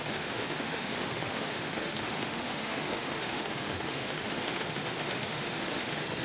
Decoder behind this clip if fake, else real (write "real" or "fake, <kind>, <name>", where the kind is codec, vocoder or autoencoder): fake, autoencoder, DAC-VAE